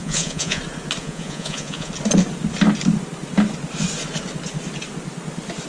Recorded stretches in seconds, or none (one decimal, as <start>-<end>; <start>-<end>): 0.6-1.0; 1.9-5.7